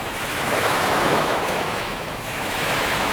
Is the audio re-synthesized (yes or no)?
yes